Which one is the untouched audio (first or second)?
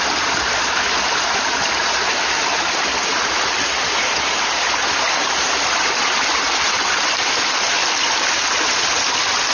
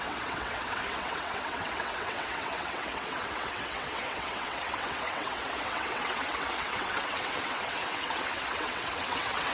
first